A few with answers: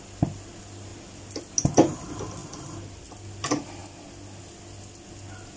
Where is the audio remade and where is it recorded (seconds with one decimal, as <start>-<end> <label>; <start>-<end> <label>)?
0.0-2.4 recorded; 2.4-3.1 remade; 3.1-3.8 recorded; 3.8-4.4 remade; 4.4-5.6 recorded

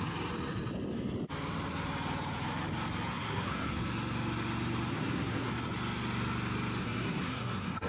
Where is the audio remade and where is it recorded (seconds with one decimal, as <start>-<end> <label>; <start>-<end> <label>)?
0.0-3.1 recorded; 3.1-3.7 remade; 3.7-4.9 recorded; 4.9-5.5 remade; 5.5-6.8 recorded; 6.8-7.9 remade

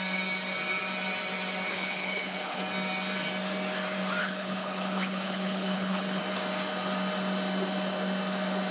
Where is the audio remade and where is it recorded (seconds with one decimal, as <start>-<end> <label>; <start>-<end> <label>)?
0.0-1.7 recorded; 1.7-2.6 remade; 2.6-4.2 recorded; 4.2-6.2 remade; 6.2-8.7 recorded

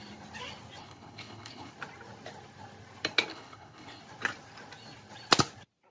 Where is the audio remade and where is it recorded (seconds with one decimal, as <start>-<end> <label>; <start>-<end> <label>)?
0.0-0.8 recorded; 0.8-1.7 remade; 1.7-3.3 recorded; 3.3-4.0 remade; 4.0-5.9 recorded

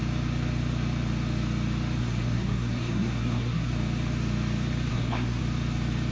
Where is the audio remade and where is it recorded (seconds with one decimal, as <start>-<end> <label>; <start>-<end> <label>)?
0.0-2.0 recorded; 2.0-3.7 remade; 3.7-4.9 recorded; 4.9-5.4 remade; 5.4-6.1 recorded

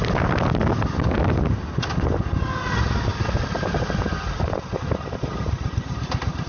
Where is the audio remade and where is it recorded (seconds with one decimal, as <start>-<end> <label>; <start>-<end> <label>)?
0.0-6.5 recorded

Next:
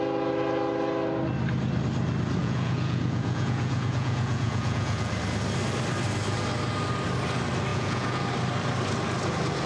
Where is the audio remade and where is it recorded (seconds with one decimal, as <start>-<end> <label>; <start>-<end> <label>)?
0.0-2.4 recorded; 2.4-5.1 remade; 5.1-7.7 recorded; 7.7-8.2 remade; 8.2-9.7 recorded

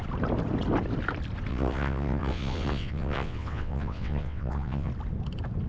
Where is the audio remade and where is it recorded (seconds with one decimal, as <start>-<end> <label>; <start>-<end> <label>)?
0.0-1.5 recorded; 1.5-4.9 remade; 4.9-5.7 recorded